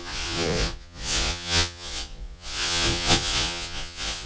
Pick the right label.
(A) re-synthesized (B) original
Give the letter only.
A